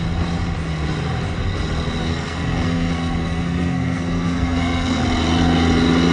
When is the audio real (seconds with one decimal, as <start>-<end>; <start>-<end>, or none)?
0.0-2.0; 5.0-6.1